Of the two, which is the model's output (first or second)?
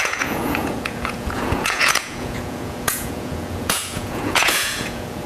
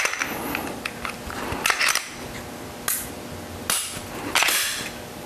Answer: first